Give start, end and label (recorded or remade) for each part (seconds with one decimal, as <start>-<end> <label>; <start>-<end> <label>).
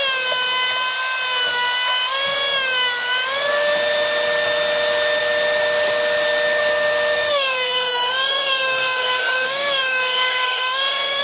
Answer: 0.0-7.3 recorded; 7.3-11.2 remade